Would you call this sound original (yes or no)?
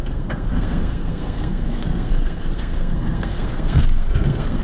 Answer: no